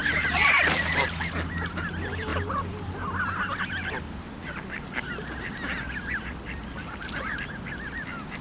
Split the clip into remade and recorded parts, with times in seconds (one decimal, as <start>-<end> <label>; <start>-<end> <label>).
0.0-2.3 recorded; 2.3-3.0 remade; 3.0-4.4 recorded; 4.4-7.9 remade; 7.9-8.4 recorded